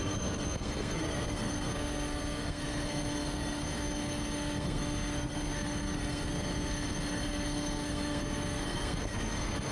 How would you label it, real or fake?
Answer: fake